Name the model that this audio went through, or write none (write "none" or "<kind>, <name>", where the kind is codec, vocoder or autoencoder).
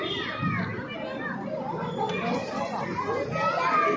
none